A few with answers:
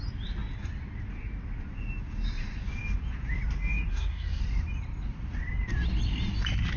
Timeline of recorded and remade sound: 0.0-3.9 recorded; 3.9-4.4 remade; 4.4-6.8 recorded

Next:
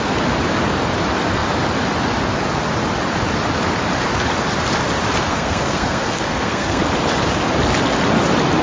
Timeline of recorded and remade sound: 0.0-5.3 recorded; 5.3-6.8 remade; 6.8-8.6 recorded

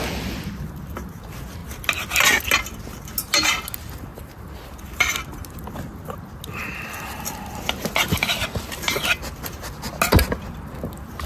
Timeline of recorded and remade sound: 0.0-11.3 recorded

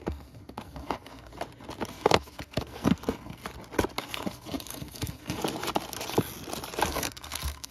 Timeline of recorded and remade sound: 0.0-1.3 remade; 1.3-1.9 recorded; 1.9-3.4 remade; 3.4-4.0 recorded; 4.0-5.4 remade; 5.4-6.9 recorded; 6.9-7.7 remade

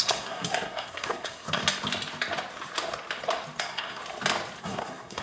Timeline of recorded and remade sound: 0.0-1.6 remade; 1.6-3.6 recorded; 3.6-4.0 remade; 4.0-4.6 recorded; 4.6-5.2 remade

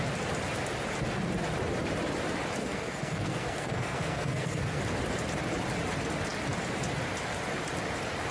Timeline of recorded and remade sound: 0.0-2.6 recorded; 2.6-4.8 remade; 4.8-8.3 recorded

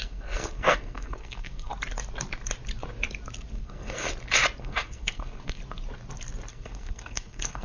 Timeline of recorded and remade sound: 0.0-1.7 remade; 1.7-3.5 recorded; 3.5-4.1 remade; 4.1-4.6 recorded; 4.6-5.6 remade; 5.6-6.5 recorded; 6.5-7.6 remade